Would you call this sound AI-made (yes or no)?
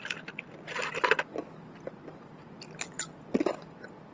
no